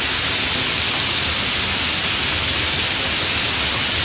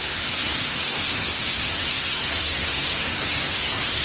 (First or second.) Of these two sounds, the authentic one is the first